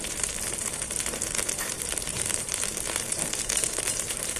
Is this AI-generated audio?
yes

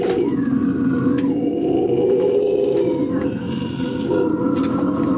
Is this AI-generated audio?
no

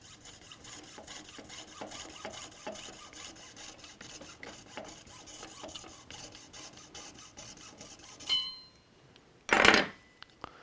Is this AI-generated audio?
no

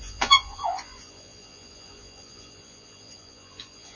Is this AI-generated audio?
yes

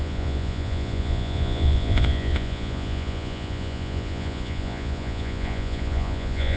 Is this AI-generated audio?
yes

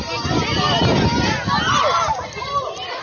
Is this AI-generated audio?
no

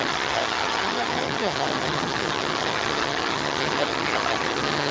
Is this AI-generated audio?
yes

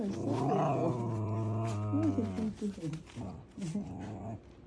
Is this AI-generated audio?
no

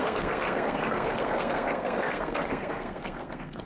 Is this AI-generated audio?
yes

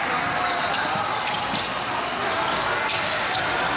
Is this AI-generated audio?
no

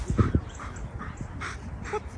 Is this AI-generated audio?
no